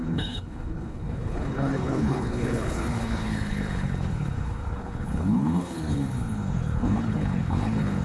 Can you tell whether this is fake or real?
fake